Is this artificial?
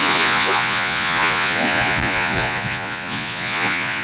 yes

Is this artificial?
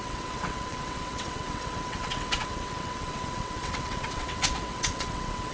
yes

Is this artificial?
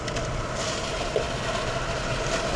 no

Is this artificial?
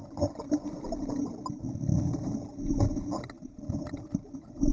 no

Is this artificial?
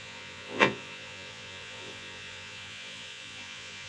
yes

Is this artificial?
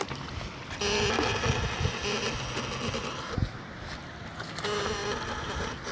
no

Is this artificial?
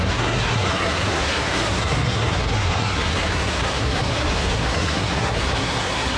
yes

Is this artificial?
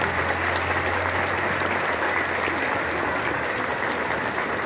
no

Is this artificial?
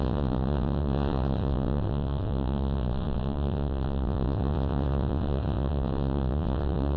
yes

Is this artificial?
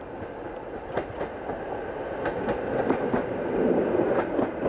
no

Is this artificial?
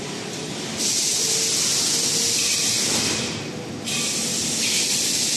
no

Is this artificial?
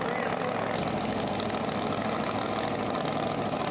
no